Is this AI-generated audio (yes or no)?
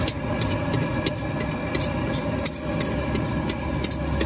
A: no